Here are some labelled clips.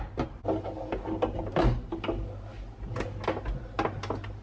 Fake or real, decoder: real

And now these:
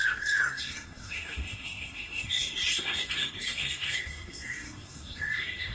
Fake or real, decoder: fake, codec, SNAC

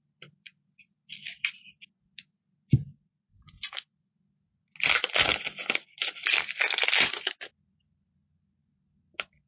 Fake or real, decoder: real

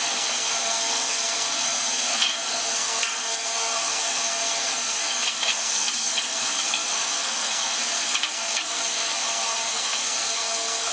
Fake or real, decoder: fake, codec, SNAC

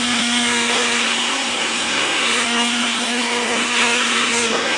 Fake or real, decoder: fake, codec, SNAC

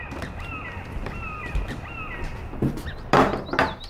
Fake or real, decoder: real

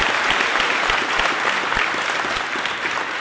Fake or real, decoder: real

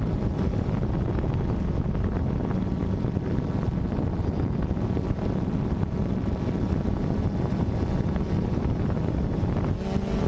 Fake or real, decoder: real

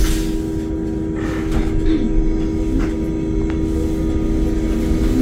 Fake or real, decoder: real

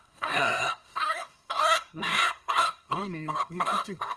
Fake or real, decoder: fake, codec, SNAC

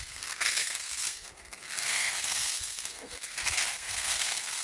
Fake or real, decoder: fake, codec, SNAC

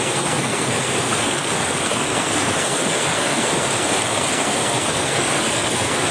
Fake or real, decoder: fake, codec, SNAC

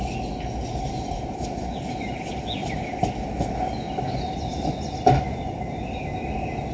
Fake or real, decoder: real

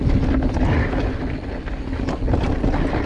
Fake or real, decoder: real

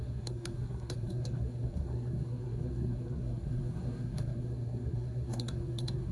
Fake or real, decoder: fake, codec, SNAC